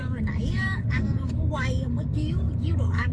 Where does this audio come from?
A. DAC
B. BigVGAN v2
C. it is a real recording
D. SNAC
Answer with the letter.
A